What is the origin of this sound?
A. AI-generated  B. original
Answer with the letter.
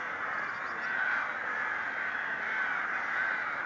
B